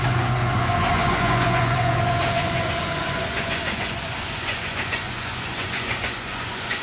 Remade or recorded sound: remade